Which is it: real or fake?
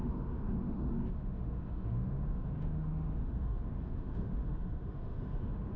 fake